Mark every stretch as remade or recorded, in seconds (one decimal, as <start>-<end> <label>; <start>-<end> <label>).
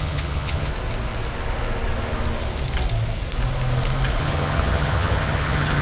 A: 0.0-0.7 remade; 0.7-4.2 recorded; 4.2-5.8 remade